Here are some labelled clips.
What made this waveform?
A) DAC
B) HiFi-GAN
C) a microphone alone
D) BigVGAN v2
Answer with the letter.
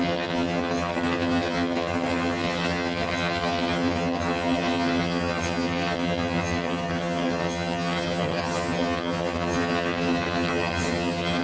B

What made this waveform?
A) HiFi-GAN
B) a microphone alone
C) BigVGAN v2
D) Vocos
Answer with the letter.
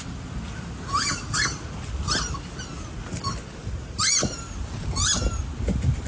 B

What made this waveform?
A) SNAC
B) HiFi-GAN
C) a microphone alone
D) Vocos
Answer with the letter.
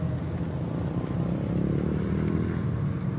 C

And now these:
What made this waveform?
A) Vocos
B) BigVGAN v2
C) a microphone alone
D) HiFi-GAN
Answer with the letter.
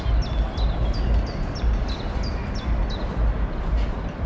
C